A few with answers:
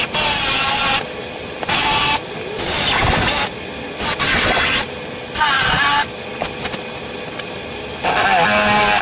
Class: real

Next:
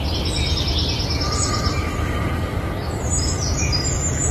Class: real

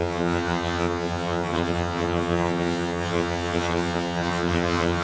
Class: fake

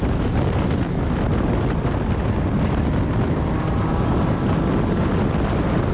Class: real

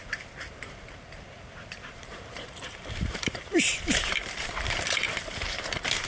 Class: fake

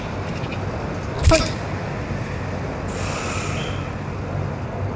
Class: real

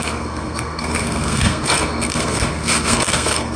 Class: fake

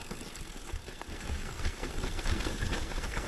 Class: fake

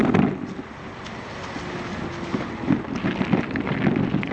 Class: real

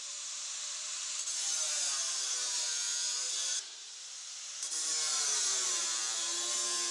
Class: fake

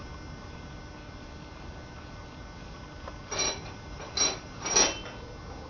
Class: real